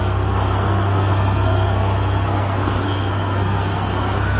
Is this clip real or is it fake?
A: fake